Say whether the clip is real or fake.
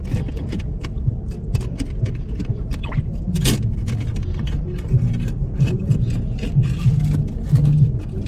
real